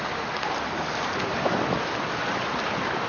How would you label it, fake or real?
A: real